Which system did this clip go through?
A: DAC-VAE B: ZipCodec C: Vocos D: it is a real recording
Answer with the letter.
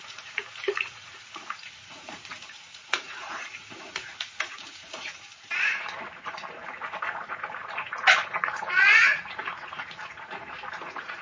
C